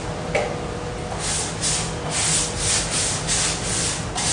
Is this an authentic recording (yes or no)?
yes